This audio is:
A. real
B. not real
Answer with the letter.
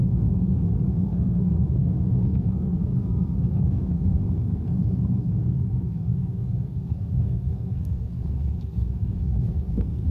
B